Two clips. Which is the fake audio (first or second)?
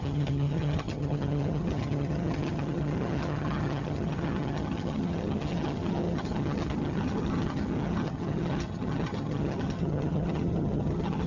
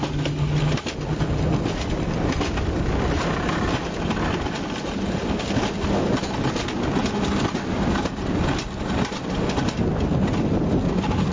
first